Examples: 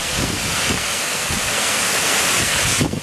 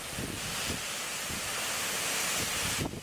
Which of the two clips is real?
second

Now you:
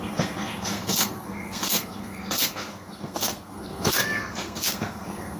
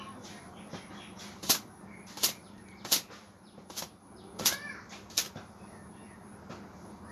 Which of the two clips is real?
second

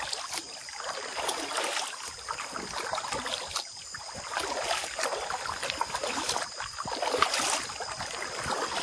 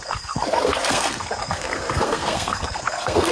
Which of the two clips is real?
first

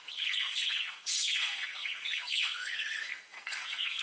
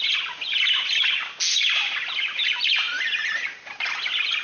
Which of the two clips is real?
second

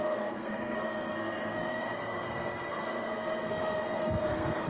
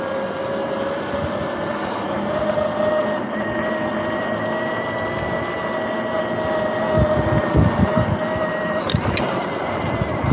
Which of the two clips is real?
second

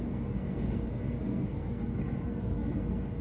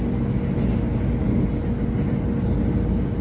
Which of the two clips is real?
second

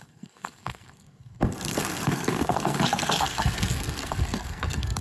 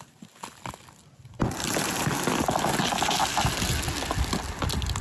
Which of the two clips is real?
second